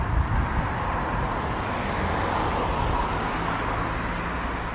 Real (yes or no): yes